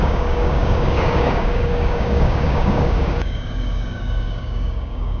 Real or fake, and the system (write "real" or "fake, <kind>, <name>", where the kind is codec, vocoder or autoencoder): fake, codec, DAC